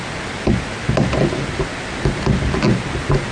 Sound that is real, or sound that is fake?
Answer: real